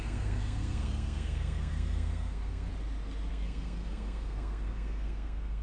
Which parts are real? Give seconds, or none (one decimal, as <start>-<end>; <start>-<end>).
2.7-3.3